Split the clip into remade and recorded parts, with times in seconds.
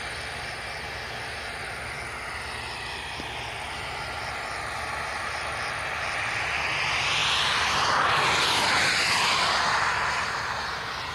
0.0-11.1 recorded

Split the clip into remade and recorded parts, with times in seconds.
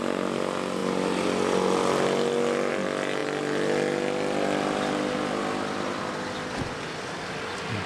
0.0-7.9 recorded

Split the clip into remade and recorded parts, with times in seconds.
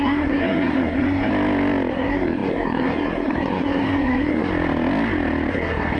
0.0-1.3 remade; 1.3-1.9 recorded; 1.9-4.5 remade; 4.5-5.5 recorded; 5.5-6.0 remade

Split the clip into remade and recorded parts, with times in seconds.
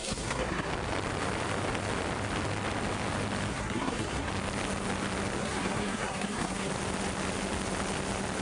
0.0-0.7 remade; 0.7-3.5 recorded; 3.5-4.3 remade; 4.3-5.4 recorded; 5.4-6.7 remade; 6.7-8.4 recorded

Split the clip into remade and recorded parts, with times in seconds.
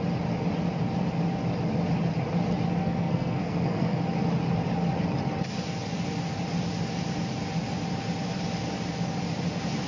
0.0-2.8 recorded; 2.8-4.0 remade; 4.0-9.9 recorded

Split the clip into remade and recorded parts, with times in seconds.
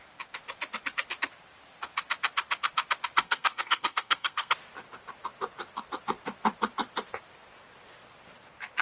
0.0-3.2 recorded; 3.2-4.5 remade; 4.5-8.8 recorded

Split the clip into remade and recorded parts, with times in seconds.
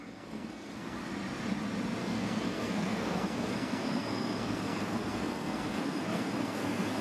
0.0-1.1 remade; 1.1-2.0 recorded; 2.0-7.0 remade